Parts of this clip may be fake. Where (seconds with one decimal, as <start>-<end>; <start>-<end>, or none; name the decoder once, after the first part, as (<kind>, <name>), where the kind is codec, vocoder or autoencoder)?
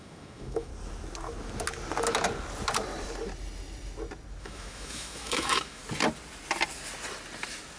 0.0-0.7 (autoencoder, DAC-VAE); 4.4-5.8